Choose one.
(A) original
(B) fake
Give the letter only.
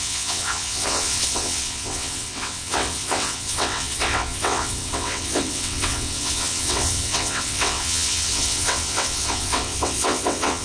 B